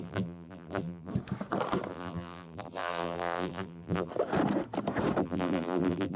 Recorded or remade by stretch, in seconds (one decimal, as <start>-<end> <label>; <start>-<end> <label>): 0.0-1.1 remade; 1.1-1.9 recorded; 1.9-4.1 remade; 4.1-5.2 recorded; 5.2-6.2 remade